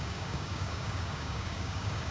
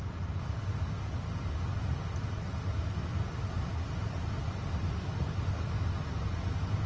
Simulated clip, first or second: first